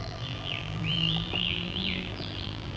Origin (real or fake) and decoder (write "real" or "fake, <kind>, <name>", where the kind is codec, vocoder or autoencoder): fake, vocoder, BigVGAN v2